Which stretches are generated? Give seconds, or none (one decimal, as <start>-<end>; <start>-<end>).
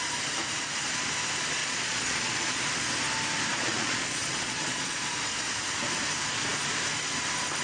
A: 1.6-2.6; 3.5-5.1